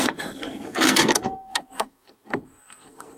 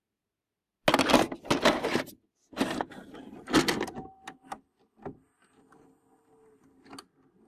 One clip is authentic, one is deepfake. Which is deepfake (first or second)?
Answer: first